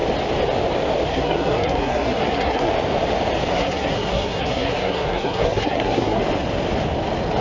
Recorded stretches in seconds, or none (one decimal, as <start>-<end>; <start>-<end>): 0.0-1.1; 2.7-3.5; 6.2-7.4